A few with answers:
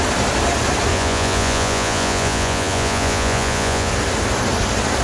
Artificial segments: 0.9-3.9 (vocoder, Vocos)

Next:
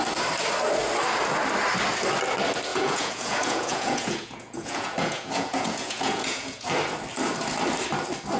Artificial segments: 2.7-6.7 (vocoder, Vocos)